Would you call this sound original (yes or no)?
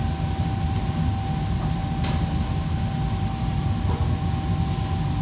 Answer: yes